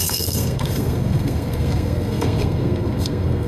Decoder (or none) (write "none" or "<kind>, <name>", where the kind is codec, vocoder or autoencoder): codec, SNAC